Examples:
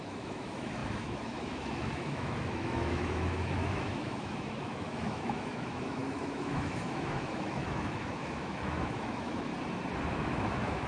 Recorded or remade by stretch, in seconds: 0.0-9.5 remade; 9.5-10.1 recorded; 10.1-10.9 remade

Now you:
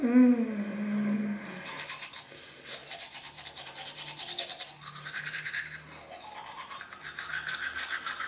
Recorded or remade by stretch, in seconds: 0.0-8.3 recorded

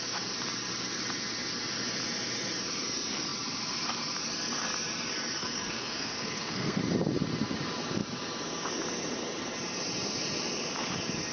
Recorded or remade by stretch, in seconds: 0.0-5.4 recorded; 5.4-6.8 remade; 6.8-11.3 recorded